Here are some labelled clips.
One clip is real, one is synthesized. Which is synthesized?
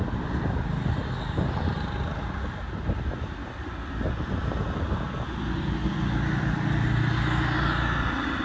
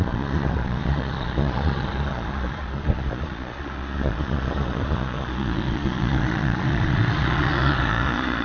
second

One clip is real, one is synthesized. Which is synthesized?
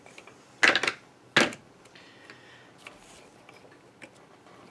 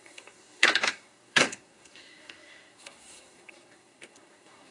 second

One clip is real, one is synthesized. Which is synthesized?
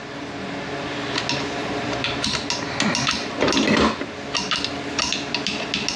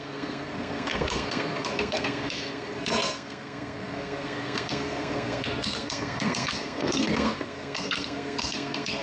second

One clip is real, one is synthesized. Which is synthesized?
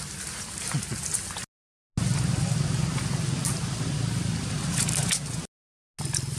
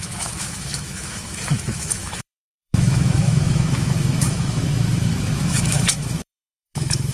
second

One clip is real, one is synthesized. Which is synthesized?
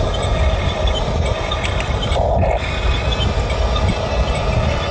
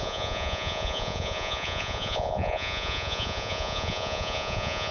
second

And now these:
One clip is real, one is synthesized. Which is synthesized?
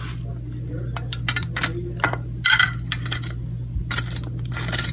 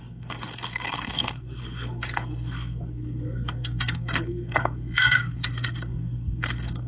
second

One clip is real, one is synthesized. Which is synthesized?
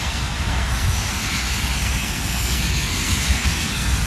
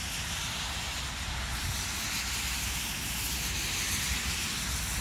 first